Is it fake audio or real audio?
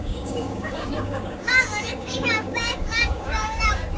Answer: fake